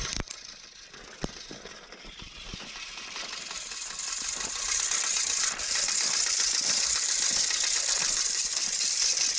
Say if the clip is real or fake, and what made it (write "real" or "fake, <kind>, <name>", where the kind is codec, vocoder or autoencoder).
real